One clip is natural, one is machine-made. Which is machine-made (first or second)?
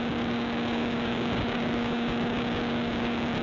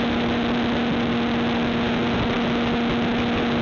first